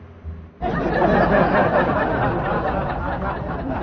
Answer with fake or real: real